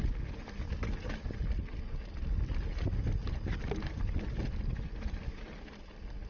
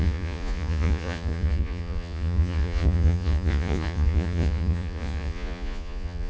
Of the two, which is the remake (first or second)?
second